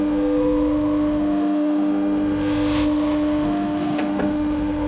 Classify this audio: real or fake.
fake